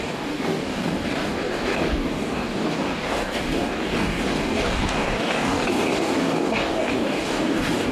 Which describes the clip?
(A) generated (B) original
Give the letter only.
A